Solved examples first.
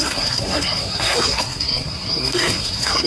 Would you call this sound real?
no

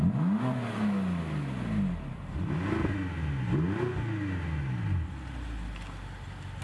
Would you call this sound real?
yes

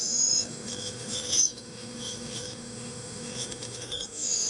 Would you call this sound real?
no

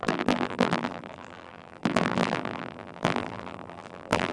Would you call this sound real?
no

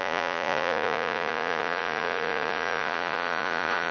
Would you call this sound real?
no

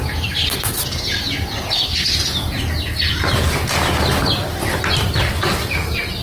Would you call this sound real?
yes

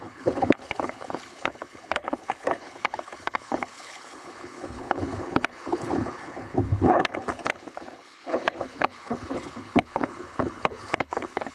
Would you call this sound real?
no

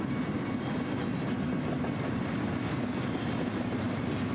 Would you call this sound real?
yes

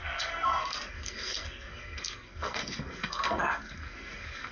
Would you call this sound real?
no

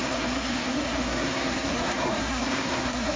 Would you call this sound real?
no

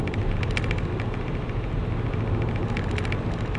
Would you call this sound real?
yes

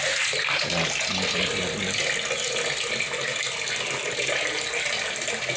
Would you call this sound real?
yes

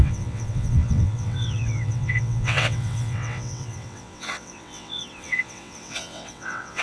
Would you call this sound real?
no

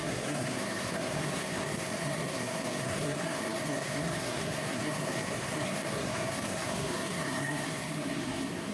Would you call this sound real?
no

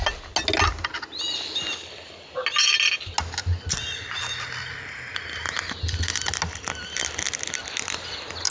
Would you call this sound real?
yes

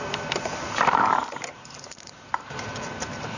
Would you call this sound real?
no